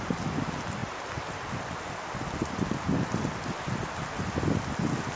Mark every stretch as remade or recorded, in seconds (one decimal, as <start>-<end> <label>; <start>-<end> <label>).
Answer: 0.0-5.2 recorded